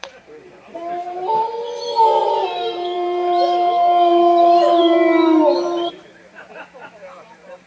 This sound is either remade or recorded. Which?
remade